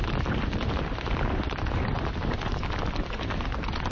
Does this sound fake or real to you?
fake